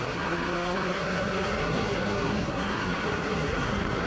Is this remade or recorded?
remade